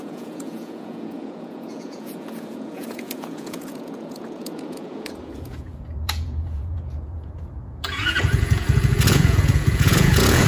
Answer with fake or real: fake